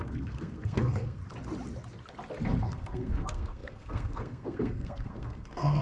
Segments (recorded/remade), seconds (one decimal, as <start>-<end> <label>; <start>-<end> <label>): 0.0-1.2 remade; 1.2-2.6 recorded; 2.6-5.8 remade